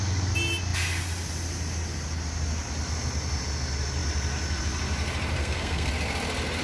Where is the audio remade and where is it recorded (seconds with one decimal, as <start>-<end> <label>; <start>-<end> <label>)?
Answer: 0.0-5.4 recorded; 5.4-5.9 remade; 5.9-6.6 recorded